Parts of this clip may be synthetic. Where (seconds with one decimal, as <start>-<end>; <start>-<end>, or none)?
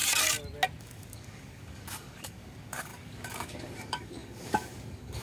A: 0.8-5.2